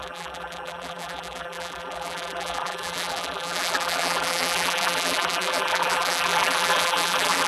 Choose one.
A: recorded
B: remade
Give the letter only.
B